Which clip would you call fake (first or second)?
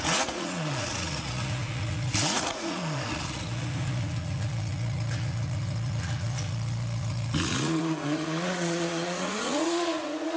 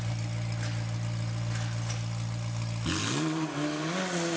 first